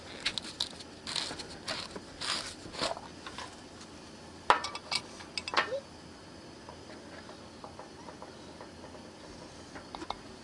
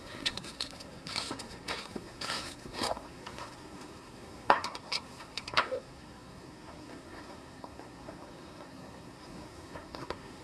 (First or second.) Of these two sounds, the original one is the first